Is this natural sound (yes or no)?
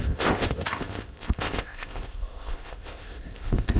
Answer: no